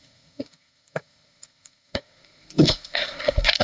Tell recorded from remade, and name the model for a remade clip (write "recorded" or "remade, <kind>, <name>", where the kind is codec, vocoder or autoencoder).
remade, codec, SNAC